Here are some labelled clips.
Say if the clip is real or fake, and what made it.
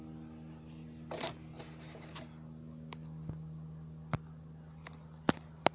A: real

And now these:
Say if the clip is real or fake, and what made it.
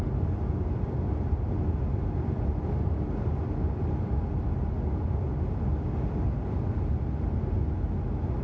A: real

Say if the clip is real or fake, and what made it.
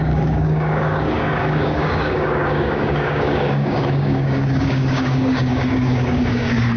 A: fake, codec, DAC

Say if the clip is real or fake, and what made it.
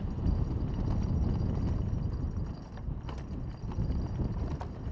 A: real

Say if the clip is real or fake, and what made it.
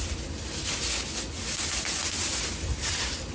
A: real